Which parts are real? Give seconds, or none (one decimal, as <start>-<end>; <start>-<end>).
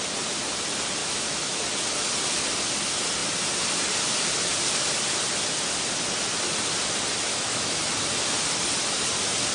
0.0-1.0; 1.6-7.3; 7.9-9.5